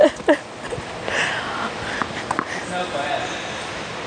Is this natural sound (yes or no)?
yes